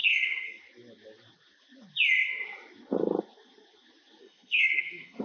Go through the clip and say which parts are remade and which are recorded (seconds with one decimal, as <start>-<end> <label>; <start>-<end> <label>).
0.0-0.6 remade; 0.6-4.2 recorded; 4.2-5.2 remade